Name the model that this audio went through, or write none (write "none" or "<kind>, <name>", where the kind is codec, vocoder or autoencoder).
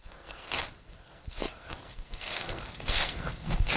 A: codec, SNAC